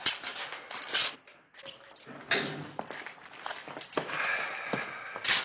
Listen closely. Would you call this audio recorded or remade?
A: recorded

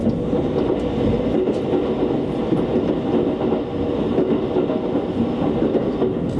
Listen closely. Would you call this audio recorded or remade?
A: recorded